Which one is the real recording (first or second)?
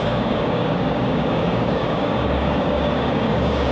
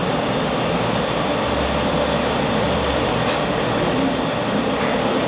second